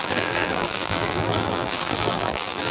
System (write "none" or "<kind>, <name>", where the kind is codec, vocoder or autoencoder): vocoder, BigVGAN v2